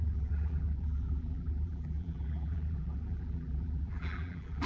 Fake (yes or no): yes